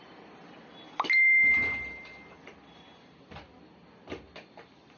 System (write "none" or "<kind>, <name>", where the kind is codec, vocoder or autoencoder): none